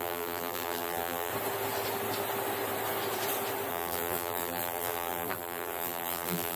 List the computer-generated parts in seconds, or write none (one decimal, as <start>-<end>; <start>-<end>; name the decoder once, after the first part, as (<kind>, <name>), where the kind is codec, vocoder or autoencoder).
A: 0.0-1.3 (vocoder, BigVGAN v2); 3.7-6.6